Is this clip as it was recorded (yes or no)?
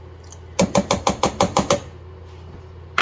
yes